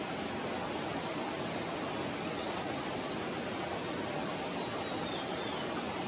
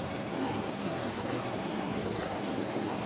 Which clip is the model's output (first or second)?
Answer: second